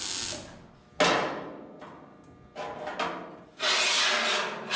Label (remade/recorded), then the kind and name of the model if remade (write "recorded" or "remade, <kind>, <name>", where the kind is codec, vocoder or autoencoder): recorded